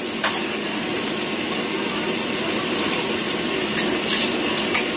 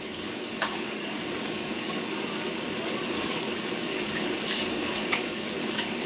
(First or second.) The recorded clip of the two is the first